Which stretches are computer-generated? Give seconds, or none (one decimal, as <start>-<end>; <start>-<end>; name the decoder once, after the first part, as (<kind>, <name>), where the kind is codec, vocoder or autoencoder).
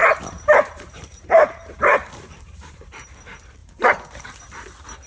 0.0-3.1 (vocoder, BigVGAN v2); 3.6-4.4